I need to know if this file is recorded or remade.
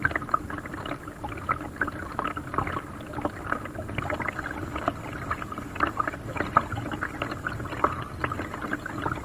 recorded